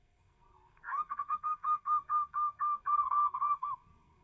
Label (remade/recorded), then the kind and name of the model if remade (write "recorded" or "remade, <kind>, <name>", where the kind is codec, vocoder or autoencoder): remade, codec, SNAC